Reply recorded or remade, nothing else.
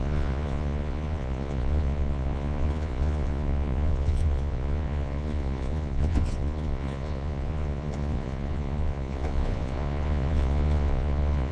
remade